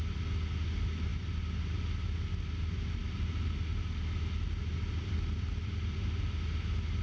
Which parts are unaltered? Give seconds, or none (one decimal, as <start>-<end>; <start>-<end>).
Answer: 0.0-7.0

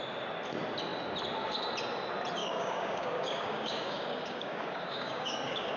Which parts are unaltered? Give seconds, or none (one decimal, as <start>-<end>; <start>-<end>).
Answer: 0.0-2.4